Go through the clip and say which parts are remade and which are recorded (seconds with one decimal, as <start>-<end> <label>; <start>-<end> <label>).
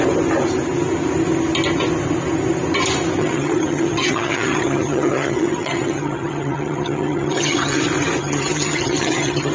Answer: 0.0-3.2 recorded; 3.2-7.8 remade; 7.8-8.2 recorded; 8.2-9.5 remade